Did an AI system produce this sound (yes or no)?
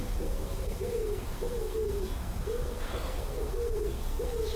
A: yes